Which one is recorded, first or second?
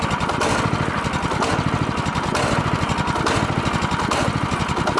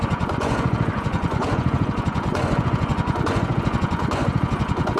first